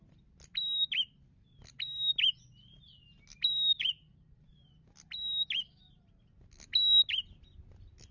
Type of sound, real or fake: real